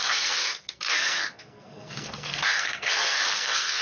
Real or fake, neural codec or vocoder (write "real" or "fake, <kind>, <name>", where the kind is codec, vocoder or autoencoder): fake, codec, SNAC